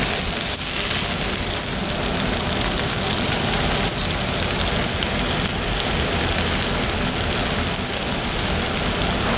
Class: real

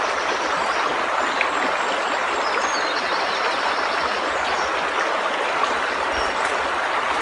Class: real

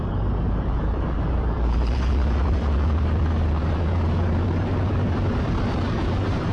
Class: fake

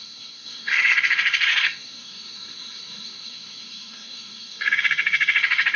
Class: fake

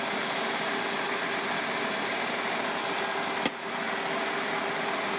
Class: real